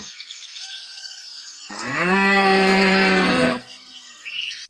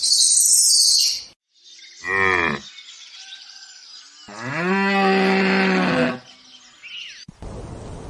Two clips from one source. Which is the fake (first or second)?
first